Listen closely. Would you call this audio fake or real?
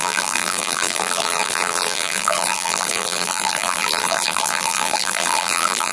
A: fake